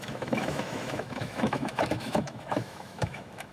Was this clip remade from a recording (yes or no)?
yes